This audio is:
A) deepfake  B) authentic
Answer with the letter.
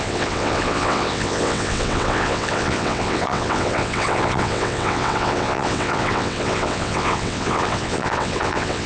A